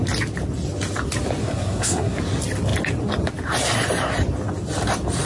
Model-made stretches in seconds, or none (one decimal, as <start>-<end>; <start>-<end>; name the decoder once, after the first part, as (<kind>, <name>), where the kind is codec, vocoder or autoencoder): 1.4-2.2 (codec, SNAC)

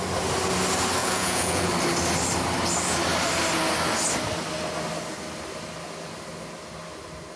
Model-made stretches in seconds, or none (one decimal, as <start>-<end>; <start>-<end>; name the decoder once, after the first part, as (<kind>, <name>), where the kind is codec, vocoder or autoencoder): 1.0-1.7 (vocoder, Vocos)

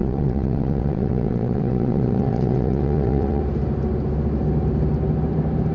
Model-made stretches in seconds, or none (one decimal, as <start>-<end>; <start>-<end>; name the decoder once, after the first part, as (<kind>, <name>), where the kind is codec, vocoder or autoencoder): 0.0-3.4 (vocoder, WaveNeXt)